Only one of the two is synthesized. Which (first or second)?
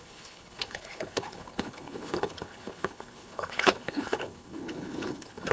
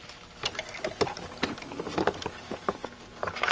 first